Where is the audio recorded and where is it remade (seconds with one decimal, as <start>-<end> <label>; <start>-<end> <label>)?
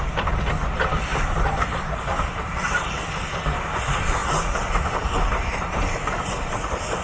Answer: 0.0-7.0 recorded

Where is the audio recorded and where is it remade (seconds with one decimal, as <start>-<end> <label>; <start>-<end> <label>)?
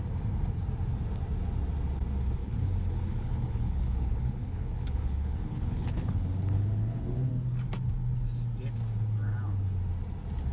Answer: 0.0-2.4 recorded; 2.4-7.3 remade; 7.3-10.5 recorded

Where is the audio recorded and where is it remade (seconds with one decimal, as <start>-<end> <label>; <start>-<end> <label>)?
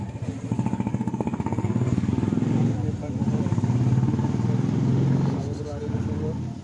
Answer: 0.0-0.9 recorded; 0.9-2.1 remade; 2.1-6.6 recorded